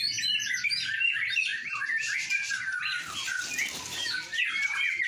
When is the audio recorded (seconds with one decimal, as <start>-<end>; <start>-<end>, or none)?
0.0-5.1